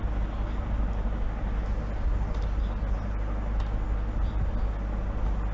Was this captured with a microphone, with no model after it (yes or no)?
yes